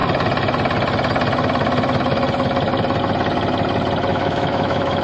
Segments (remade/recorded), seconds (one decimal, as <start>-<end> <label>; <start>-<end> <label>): 0.0-4.1 recorded; 4.1-5.0 remade